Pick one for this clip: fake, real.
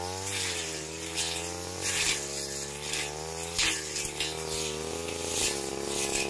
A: real